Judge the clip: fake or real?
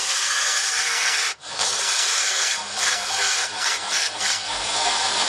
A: fake